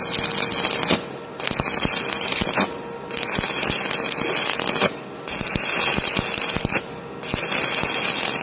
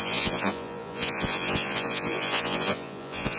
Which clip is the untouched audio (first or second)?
first